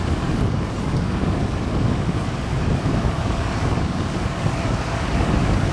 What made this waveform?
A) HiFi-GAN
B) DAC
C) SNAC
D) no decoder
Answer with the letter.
B